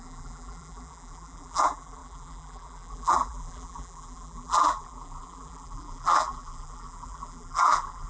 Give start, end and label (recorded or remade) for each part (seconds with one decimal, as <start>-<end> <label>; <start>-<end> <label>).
0.0-8.1 remade